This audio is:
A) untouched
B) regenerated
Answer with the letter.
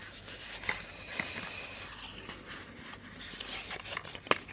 A